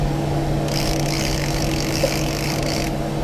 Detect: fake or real fake